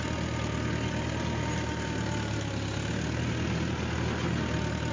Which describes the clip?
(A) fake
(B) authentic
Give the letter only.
B